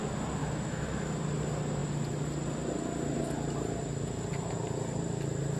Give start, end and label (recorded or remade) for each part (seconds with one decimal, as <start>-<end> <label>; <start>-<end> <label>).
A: 0.0-0.4 recorded; 0.4-1.1 remade; 1.1-5.6 recorded